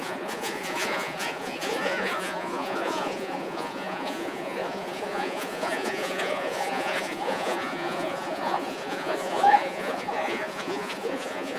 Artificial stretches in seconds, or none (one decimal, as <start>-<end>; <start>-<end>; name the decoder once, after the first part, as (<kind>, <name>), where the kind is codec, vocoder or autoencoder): 0.0-11.6 (vocoder, Vocos)